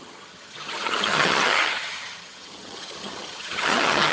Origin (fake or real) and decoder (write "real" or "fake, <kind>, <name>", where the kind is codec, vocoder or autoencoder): fake, vocoder, HiFi-GAN